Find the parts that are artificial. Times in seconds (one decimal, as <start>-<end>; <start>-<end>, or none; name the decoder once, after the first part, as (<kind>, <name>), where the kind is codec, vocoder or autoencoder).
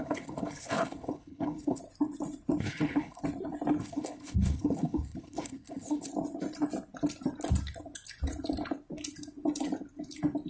0.0-1.8 (codec, HILCodec); 2.6-3.2; 3.8-6.1